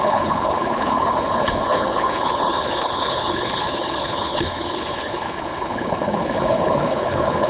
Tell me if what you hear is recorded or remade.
remade